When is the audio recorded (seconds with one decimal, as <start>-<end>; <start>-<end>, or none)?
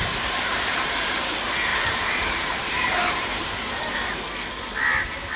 0.0-0.5; 1.2-1.7; 4.2-5.4